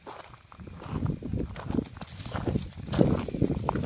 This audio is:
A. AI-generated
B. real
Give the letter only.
B